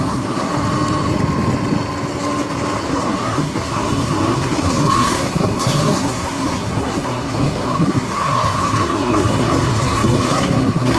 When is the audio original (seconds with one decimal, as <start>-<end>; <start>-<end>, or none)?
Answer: 0.5-2.9